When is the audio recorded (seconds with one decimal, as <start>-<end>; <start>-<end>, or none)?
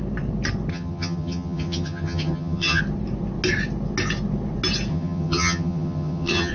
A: 0.0-0.7; 2.8-4.9